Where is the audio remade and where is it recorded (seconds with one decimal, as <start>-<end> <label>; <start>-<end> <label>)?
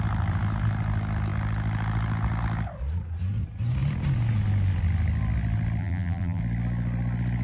0.0-5.8 recorded; 5.8-6.4 remade; 6.4-7.4 recorded